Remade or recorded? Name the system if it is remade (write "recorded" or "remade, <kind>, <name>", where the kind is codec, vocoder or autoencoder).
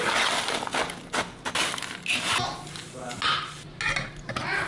recorded